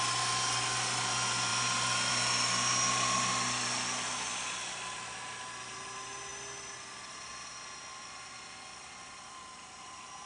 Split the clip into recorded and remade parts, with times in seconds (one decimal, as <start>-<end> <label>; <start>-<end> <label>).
0.0-10.3 recorded